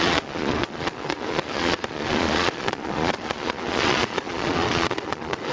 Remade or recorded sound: remade